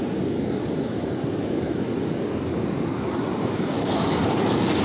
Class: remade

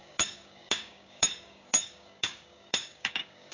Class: remade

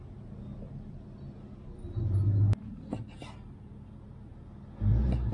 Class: recorded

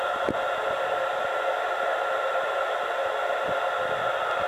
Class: recorded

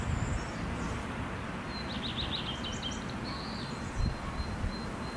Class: recorded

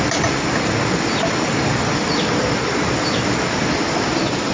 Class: recorded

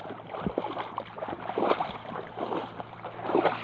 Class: recorded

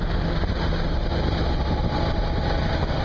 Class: recorded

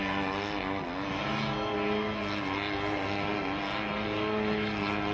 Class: recorded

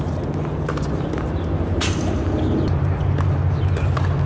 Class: recorded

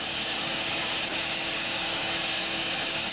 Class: remade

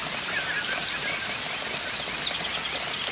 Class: recorded